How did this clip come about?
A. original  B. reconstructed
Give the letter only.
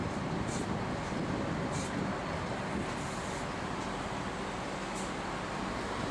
A